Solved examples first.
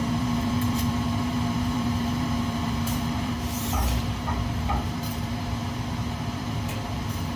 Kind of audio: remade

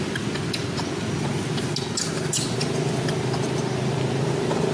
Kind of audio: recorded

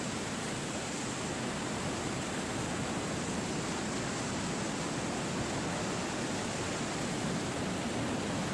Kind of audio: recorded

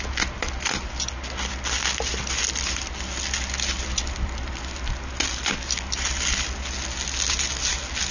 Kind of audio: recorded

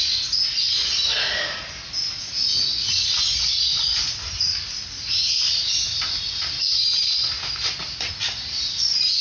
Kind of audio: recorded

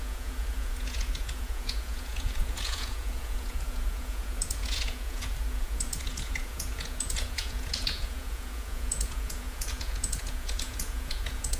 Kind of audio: remade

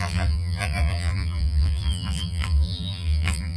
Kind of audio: remade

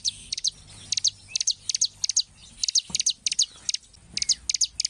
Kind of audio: recorded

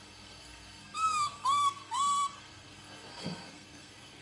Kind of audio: remade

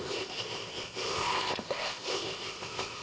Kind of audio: remade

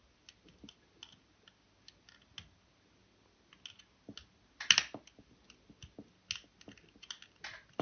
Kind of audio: recorded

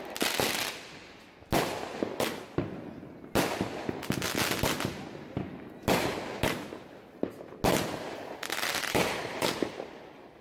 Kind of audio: recorded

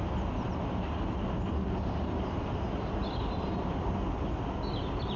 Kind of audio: recorded